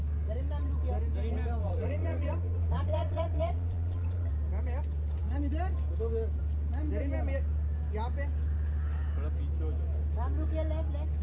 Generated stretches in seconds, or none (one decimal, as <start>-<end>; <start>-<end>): 1.6-4.3